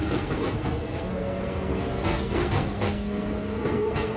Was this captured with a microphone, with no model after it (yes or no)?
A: no